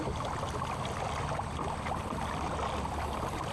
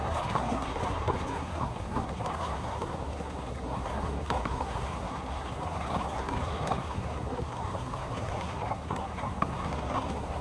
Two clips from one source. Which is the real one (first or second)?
first